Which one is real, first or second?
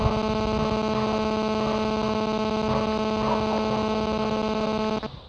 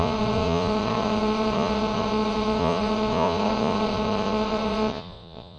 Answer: first